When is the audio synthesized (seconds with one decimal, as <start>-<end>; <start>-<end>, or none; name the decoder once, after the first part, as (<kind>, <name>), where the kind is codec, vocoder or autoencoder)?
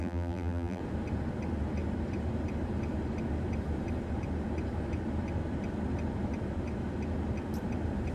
0.0-0.8 (vocoder, BigVGAN v2)